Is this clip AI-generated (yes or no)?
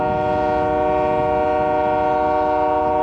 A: no